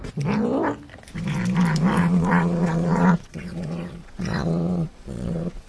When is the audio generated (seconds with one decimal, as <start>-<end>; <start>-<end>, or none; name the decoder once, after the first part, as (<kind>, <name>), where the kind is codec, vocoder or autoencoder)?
2.0-5.7 (vocoder, Vocos)